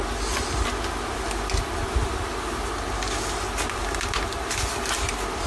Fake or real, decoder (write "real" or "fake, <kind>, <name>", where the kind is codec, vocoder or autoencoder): real